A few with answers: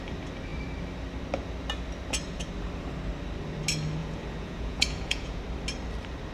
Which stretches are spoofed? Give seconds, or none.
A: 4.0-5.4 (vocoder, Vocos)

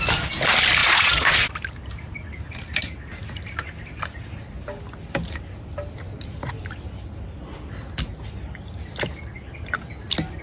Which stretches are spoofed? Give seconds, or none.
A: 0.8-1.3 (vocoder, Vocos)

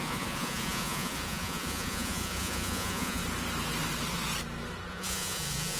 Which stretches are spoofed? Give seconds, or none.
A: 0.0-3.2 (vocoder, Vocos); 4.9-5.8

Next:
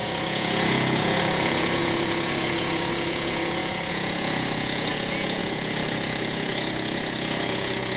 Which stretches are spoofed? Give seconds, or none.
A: 0.0-8.0 (vocoder, Vocos)

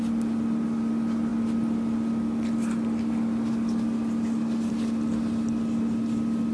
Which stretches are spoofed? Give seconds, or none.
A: none

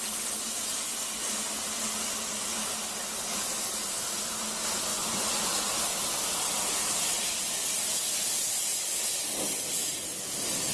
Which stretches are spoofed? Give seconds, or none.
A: 4.9-5.5 (vocoder, Vocos)